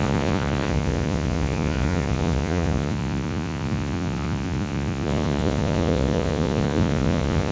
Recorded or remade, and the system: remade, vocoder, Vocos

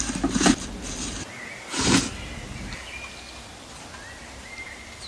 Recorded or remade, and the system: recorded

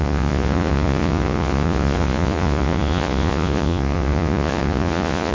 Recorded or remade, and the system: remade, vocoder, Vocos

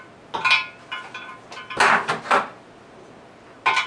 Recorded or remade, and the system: recorded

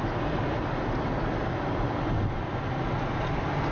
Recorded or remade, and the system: recorded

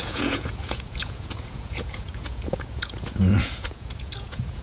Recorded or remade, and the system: remade, vocoder, Vocos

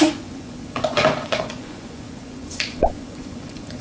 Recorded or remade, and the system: remade, vocoder, Vocos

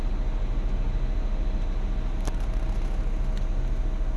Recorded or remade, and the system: recorded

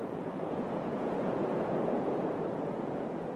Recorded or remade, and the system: remade, vocoder, Vocos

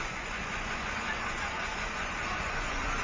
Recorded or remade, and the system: remade, vocoder, Vocos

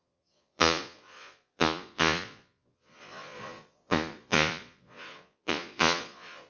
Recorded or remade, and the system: remade, vocoder, Vocos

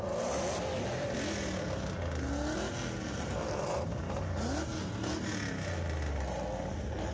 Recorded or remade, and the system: recorded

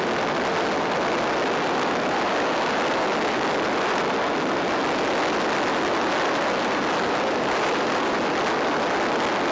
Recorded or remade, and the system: recorded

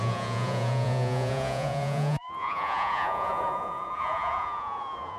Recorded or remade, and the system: remade, vocoder, Vocos